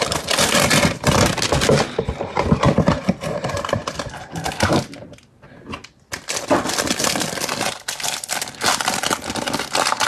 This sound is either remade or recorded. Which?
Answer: recorded